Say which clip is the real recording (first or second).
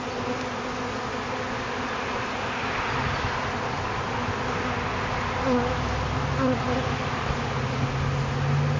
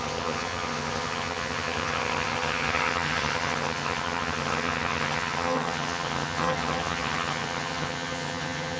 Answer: first